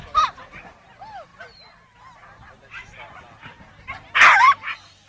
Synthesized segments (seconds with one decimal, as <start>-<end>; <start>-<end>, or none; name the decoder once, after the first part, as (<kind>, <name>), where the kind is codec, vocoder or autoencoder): 0.0-1.3 (vocoder, BigVGAN v2); 4.4-5.1